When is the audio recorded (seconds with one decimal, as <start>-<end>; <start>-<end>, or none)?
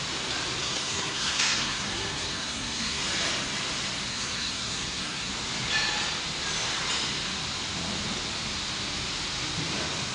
0.0-0.6; 3.0-4.1; 5.3-10.1